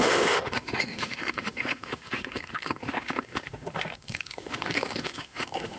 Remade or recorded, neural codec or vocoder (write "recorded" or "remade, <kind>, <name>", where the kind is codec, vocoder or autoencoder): remade, autoencoder, DAC-VAE